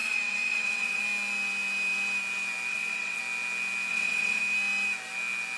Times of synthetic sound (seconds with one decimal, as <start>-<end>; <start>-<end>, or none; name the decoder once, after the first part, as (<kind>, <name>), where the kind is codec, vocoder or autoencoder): 0.0-1.0 (vocoder, WaveNeXt); 2.7-3.2; 3.9-4.4